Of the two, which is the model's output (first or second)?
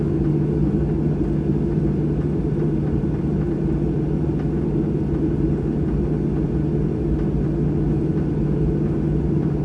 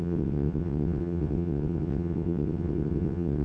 second